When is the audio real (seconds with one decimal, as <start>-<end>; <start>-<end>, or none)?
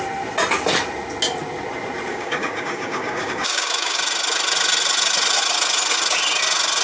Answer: 0.0-2.1; 4.0-6.8